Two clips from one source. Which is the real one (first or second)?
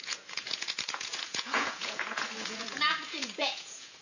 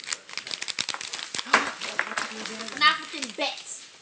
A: second